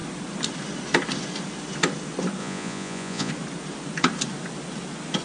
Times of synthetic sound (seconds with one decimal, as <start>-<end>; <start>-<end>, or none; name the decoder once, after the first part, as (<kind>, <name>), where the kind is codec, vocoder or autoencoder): 2.4-3.3 (vocoder, Vocos)